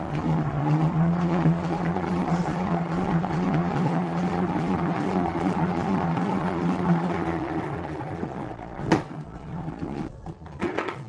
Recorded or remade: remade